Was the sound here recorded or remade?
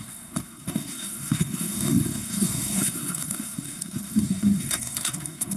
remade